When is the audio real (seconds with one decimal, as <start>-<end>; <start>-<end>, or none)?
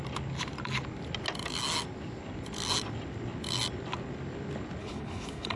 0.0-4.8